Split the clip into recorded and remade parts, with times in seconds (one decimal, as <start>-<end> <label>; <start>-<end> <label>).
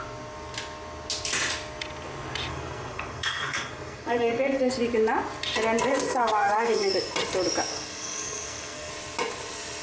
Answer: 0.0-2.5 recorded; 2.5-4.7 remade; 4.7-5.9 recorded; 5.9-6.9 remade; 6.9-7.7 recorded; 7.7-8.9 remade; 8.9-9.8 recorded